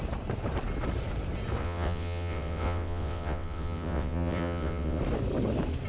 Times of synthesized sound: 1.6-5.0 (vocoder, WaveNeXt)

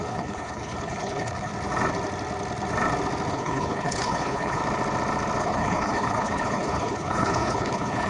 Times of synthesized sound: 0.0-1.5 (codec, HILCodec); 3.3-4.6; 5.4-8.1

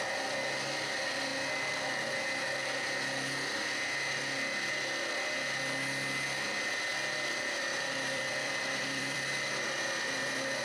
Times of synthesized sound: 6.9-9.5 (vocoder, BigVGAN v2)

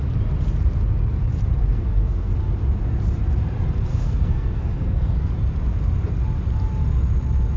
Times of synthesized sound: 1.6-2.3 (codec, SNAC); 3.9-5.3

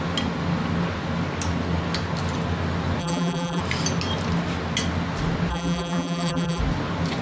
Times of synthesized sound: 3.0-3.6 (vocoder, BigVGAN v2); 5.5-6.6

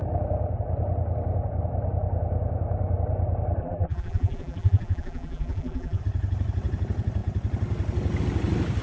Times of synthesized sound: 3.6-6.0 (vocoder, BigVGAN v2)

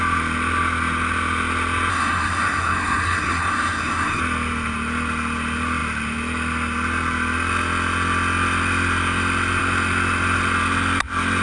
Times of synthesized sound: 1.9-4.2 (codec, SNAC)

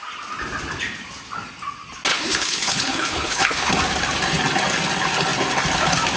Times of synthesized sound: 2.1-3.7 (codec, HILCodec)